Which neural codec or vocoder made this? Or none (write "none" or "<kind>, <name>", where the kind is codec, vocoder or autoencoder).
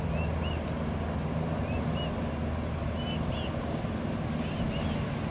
none